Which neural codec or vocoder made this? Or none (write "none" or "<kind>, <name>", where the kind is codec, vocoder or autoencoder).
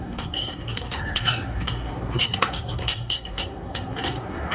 codec, SNAC